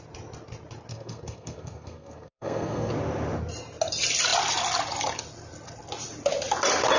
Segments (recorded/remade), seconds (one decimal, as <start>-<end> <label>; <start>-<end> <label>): 0.0-0.9 recorded; 0.9-2.9 remade; 2.9-7.0 recorded